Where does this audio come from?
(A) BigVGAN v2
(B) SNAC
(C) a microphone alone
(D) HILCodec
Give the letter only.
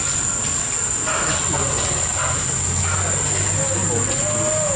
C